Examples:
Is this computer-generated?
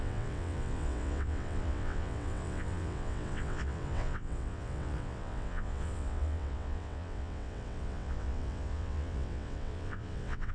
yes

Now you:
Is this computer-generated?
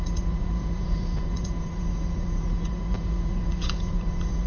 yes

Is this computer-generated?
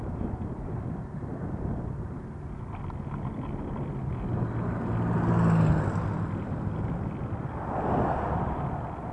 no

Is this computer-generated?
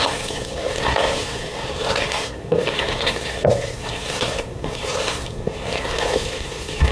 yes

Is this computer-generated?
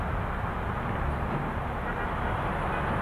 no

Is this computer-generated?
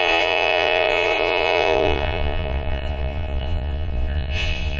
yes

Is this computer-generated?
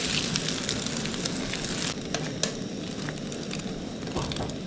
no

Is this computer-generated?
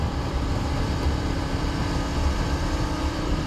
yes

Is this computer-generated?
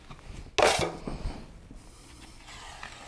no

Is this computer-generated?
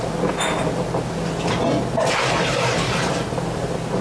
no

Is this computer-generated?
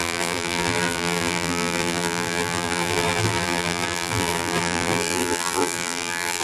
yes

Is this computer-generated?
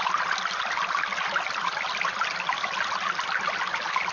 no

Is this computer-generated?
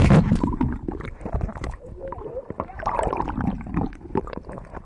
yes